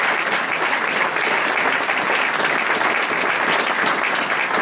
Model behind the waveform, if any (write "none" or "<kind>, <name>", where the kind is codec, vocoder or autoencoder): none